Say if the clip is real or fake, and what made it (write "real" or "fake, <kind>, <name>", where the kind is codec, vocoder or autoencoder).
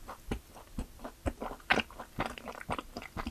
real